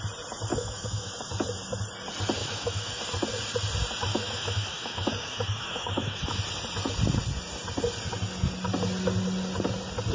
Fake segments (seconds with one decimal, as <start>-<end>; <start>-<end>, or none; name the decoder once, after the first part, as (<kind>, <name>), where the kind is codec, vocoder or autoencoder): 0.5-1.1 (autoencoder, DAC-VAE); 2.4-3.0; 4.1-6.4